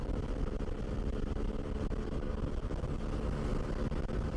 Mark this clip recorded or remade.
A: recorded